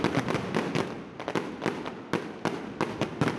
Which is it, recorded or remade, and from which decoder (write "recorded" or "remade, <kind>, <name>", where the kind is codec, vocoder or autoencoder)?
recorded